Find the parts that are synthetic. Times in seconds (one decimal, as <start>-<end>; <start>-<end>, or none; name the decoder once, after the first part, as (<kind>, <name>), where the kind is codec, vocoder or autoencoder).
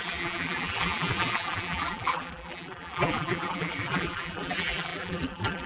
0.0-5.7 (vocoder, BigVGAN v2)